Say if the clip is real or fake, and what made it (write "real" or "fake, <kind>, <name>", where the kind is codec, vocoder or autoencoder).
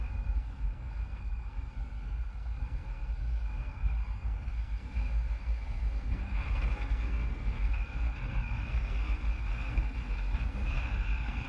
fake, codec, SNAC